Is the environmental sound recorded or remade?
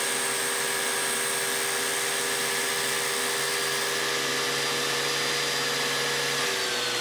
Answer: recorded